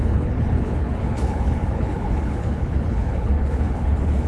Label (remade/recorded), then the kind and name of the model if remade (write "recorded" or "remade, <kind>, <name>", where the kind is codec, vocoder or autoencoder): remade, codec, HILCodec